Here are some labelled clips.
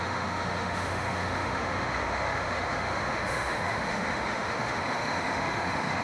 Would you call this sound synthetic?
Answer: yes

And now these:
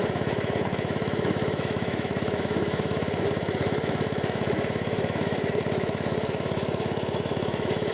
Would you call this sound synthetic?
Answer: yes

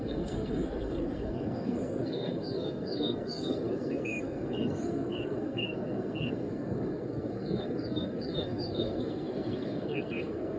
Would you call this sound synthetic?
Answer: yes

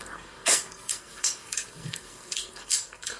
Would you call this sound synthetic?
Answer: yes